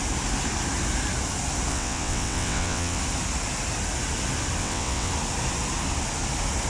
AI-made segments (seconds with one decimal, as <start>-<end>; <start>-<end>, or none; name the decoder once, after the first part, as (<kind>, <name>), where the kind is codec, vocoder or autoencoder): 1.7-3.0 (vocoder, WaveNeXt); 4.6-5.1